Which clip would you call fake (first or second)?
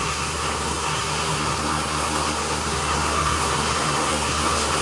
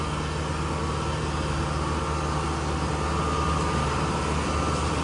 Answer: first